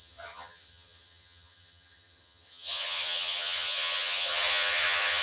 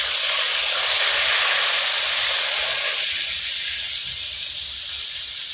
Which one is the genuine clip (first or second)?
second